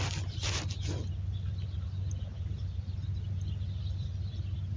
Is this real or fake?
real